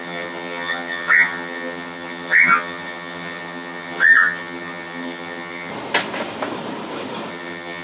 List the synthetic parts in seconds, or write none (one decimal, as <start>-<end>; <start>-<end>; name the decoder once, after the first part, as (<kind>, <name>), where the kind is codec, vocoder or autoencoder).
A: 0.0-5.7 (vocoder, HiFi-GAN); 7.3-7.8